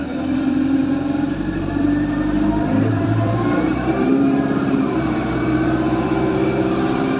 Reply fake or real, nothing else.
fake